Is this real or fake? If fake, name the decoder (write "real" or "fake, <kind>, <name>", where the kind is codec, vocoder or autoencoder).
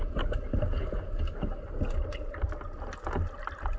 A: real